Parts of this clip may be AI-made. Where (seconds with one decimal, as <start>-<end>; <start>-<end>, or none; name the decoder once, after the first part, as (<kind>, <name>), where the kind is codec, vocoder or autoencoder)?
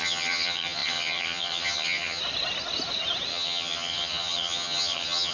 0.0-2.2 (vocoder, HiFi-GAN); 3.3-5.3